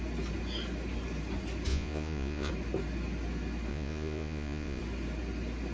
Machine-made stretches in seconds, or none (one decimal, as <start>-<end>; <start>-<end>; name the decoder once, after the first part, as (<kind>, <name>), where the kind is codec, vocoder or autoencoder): 1.7-2.5 (vocoder, Vocos); 3.7-4.8

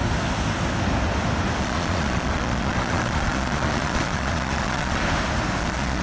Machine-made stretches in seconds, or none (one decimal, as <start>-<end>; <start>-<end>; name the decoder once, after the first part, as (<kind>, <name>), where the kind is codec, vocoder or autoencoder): 1.6-5.0 (vocoder, Vocos); 5.6-6.0

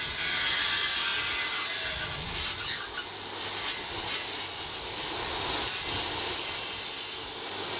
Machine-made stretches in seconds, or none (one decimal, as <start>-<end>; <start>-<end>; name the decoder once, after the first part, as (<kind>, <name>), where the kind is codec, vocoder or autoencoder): none

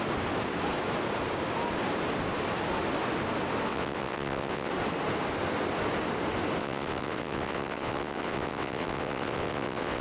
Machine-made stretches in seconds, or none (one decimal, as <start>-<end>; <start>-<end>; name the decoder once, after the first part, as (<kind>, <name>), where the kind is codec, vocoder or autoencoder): 3.7-4.7 (vocoder, WaveNeXt); 6.6-10.0

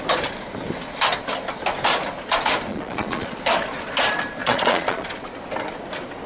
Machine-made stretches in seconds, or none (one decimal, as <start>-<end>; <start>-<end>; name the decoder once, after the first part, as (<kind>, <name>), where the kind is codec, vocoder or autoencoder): 2.7-3.3 (vocoder, Vocos); 4.4-5.3